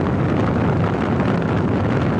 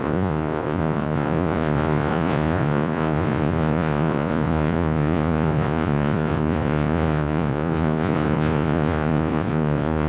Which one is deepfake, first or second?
second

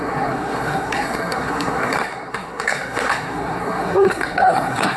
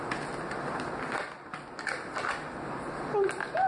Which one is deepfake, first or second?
first